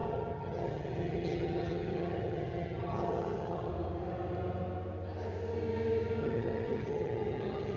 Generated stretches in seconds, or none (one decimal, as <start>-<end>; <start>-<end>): 0.0-3.7; 6.2-7.8